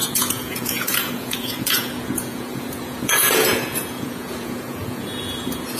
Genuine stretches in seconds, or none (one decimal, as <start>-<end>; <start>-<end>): none